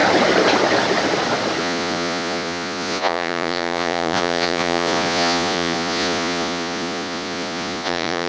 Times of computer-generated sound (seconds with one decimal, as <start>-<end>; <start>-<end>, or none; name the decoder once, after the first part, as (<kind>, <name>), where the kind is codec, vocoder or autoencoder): 1.6-8.3 (vocoder, Vocos)